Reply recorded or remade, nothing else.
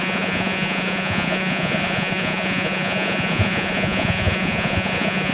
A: remade